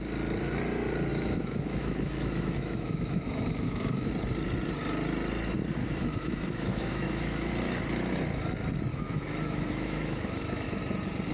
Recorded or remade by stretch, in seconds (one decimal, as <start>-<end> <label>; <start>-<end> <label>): 0.0-1.1 recorded; 1.1-4.1 remade; 4.1-5.8 recorded; 5.8-7.5 remade; 7.5-8.9 recorded; 8.9-10.8 remade; 10.8-11.3 recorded